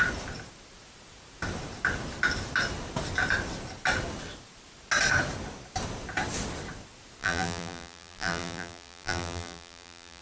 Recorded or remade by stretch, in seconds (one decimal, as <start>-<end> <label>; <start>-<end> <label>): 0.0-7.2 recorded; 7.2-10.2 remade